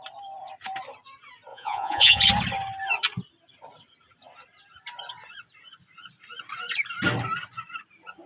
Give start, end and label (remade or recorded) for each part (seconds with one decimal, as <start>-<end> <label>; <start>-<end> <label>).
0.0-1.5 recorded; 1.5-2.2 remade; 2.2-8.3 recorded